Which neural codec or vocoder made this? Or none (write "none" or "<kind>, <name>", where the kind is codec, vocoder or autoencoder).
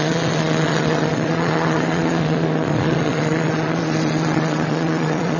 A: vocoder, Vocos